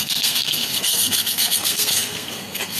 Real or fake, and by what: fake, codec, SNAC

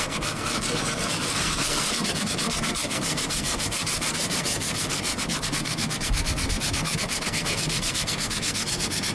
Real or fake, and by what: fake, codec, SNAC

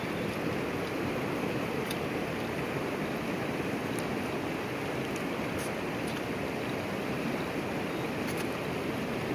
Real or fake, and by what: real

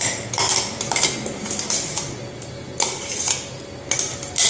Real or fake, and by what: real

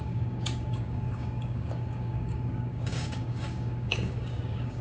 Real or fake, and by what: fake, codec, DAC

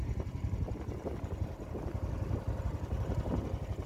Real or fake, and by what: real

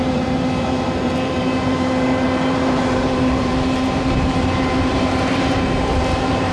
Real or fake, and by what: fake, vocoder, BigVGAN v2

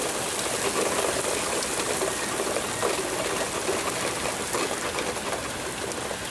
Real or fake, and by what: real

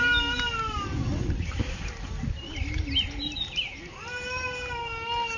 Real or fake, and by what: real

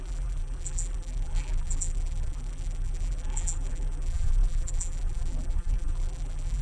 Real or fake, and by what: fake, vocoder, BigVGAN v2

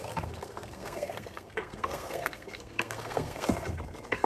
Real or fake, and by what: fake, codec, SNAC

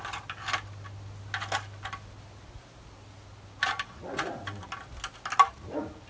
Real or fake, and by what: real